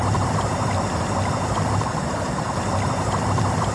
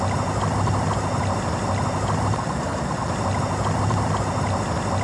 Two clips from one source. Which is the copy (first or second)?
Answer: first